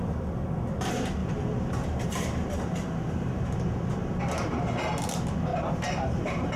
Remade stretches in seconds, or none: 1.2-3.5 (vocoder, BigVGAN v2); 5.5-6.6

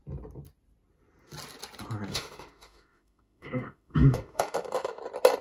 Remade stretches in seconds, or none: 2.1-5.0 (autoencoder, DAC-VAE)

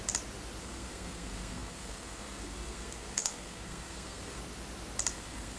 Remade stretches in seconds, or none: 0.6-4.4 (codec, SNAC); 5.1-5.6

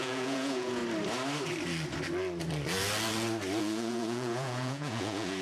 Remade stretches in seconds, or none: 0.0-0.8 (vocoder, Vocos); 3.6-5.4

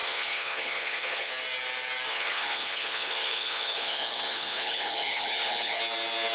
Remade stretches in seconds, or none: 0.0-1.3 (codec, HILCodec); 2.1-5.8